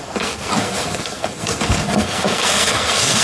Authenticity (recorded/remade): remade